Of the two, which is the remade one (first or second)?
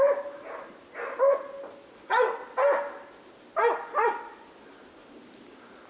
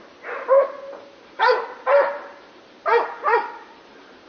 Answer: second